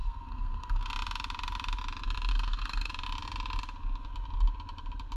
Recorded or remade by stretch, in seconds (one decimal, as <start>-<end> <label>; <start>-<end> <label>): 0.0-0.9 remade; 0.9-2.3 recorded; 2.3-2.9 remade; 2.9-5.2 recorded